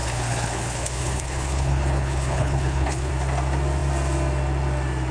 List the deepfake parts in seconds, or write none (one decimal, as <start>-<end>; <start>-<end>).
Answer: 0.0-3.1